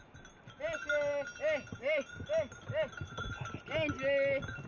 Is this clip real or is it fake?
real